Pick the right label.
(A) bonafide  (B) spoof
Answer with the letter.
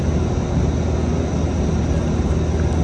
A